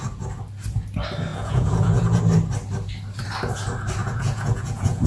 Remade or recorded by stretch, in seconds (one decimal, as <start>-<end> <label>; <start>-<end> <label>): 0.0-1.3 recorded; 1.3-2.2 remade; 2.2-4.0 recorded; 4.0-5.1 remade